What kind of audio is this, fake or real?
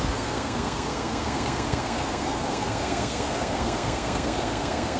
fake